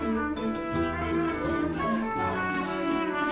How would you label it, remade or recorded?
remade